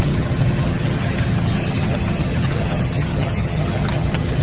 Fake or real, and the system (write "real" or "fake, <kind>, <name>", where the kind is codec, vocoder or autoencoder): fake, vocoder, HiFi-GAN